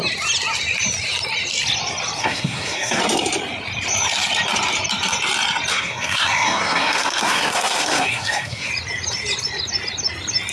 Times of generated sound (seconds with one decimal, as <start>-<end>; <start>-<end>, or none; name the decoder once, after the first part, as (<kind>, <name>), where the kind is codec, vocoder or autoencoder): 2.2-3.0 (codec, SNAC); 5.7-8.7